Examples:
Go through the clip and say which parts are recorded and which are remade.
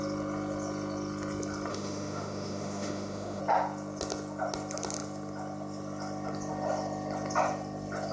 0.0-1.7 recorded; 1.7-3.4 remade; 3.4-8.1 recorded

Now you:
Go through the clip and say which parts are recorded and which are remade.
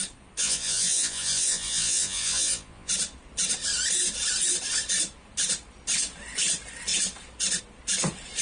0.0-0.4 recorded; 0.4-2.9 remade; 2.9-8.4 recorded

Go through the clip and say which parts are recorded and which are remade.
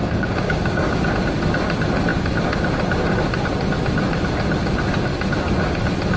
0.0-1.1 remade; 1.1-6.2 recorded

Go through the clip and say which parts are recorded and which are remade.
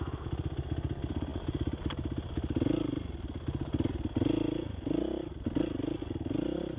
0.0-6.8 recorded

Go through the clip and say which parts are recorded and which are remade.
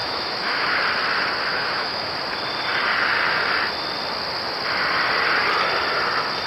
0.0-0.8 remade; 0.8-1.5 recorded; 1.5-2.1 remade; 2.1-6.5 recorded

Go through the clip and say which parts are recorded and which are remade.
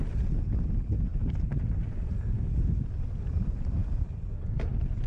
0.0-5.1 recorded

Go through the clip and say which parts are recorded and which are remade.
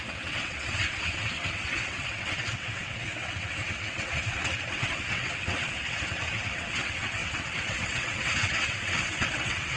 0.0-9.8 remade